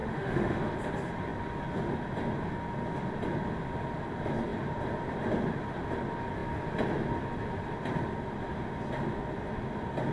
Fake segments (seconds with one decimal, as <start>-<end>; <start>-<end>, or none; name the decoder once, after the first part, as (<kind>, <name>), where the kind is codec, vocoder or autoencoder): 0.0-0.6 (autoencoder, DAC-VAE)